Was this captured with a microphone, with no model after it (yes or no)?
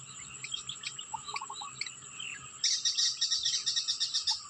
yes